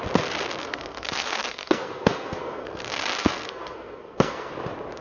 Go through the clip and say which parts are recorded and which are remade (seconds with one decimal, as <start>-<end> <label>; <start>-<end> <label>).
0.0-0.6 recorded; 0.6-2.8 remade; 2.8-3.2 recorded; 3.2-4.5 remade; 4.5-5.0 recorded